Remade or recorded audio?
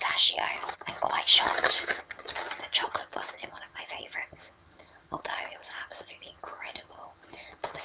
remade